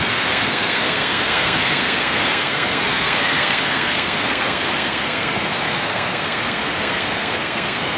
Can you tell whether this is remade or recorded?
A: remade